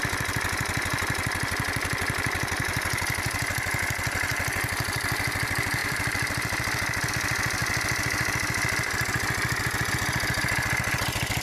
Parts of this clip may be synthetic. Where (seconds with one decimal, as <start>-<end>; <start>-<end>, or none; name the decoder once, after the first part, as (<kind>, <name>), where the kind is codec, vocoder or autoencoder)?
5.8-7.1 (vocoder, BigVGAN v2)